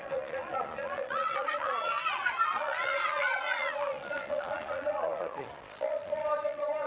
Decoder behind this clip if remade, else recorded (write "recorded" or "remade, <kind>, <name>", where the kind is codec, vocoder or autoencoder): remade, vocoder, Vocos